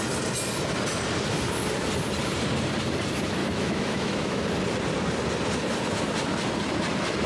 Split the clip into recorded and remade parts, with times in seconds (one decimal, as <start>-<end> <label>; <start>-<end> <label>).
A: 0.0-3.4 recorded; 3.4-4.4 remade; 4.4-7.3 recorded